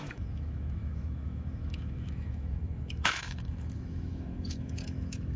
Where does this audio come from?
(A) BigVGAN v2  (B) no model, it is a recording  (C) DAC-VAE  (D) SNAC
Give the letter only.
C